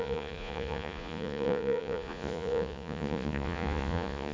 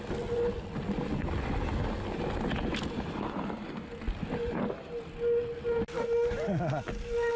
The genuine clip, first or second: second